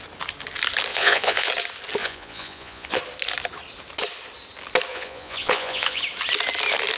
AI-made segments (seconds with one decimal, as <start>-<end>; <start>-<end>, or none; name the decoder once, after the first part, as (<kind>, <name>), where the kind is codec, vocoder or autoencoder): 0.9-1.5 (vocoder, Vocos); 2.0-3.0; 4.9-6.0